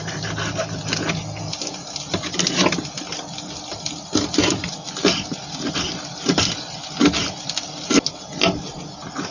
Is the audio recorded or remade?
recorded